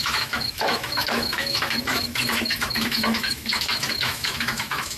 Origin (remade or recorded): remade